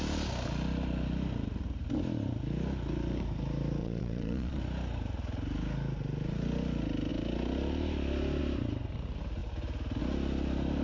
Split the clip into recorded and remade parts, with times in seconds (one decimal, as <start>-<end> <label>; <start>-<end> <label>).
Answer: 0.0-3.8 recorded; 3.8-4.6 remade; 4.6-10.8 recorded